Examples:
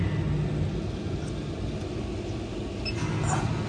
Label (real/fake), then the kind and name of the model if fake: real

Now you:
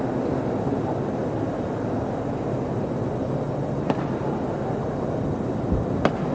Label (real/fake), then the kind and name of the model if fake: real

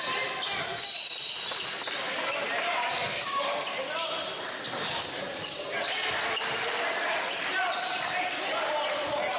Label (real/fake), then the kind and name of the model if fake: real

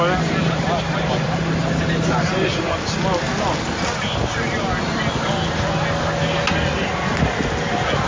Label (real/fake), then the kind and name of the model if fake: real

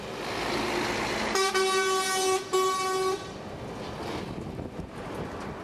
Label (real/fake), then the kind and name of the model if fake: real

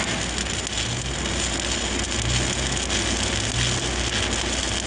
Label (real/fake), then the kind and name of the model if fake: real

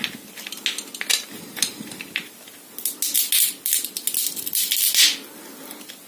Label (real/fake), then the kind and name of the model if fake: real